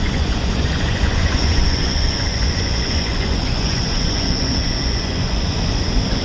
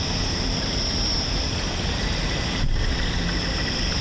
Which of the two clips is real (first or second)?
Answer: second